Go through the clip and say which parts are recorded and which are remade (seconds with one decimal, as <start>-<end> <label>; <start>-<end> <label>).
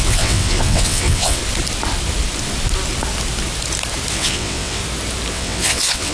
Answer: 0.0-1.4 remade; 1.4-4.1 recorded; 4.1-4.8 remade; 4.8-5.3 recorded; 5.3-6.1 remade